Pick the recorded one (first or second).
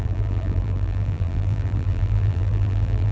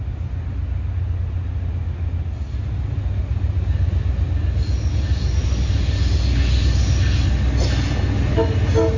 second